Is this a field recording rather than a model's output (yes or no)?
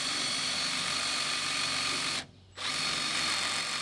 yes